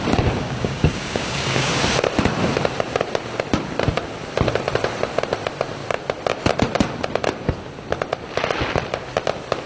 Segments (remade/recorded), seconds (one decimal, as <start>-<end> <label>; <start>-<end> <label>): 0.0-0.4 recorded; 0.4-1.8 remade; 1.8-9.7 recorded